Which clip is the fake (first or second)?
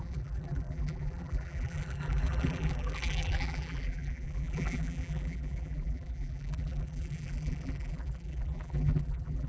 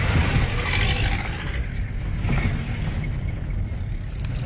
first